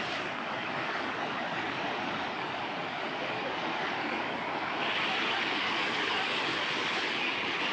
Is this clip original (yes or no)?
no